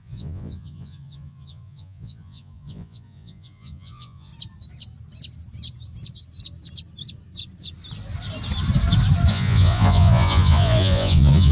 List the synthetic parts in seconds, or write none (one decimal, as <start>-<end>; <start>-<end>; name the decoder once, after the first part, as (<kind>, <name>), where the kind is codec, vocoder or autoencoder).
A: 0.0-4.3 (vocoder, Vocos); 9.3-11.5